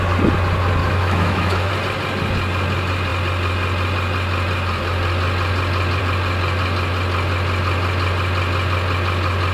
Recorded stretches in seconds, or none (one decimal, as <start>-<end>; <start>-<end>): 0.0-0.8; 1.7-9.5